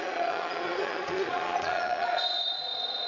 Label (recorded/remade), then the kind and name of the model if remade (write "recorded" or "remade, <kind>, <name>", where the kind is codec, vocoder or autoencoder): remade, vocoder, Vocos